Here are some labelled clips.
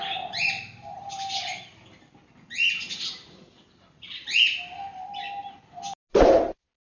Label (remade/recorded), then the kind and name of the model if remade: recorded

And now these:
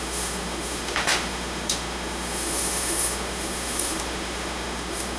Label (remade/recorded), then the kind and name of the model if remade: remade, autoencoder, DAC-VAE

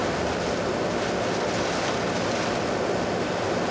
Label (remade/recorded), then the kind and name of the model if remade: recorded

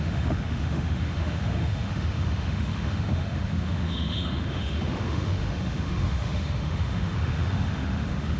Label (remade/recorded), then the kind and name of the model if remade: remade, autoencoder, DAC-VAE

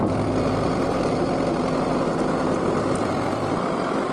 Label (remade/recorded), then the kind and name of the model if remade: recorded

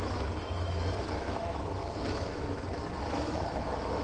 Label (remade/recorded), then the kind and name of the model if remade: remade, autoencoder, DAC-VAE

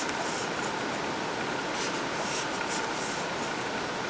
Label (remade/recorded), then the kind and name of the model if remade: recorded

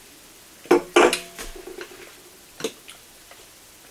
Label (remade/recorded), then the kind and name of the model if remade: recorded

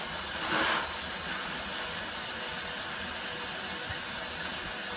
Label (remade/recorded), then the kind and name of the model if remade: recorded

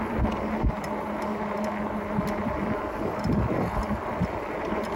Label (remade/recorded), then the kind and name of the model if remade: recorded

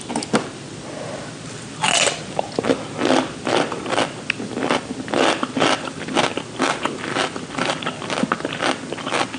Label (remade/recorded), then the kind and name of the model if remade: recorded